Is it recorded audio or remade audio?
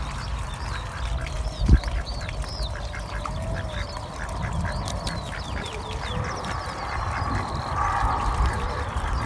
recorded